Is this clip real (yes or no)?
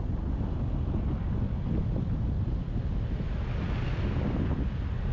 yes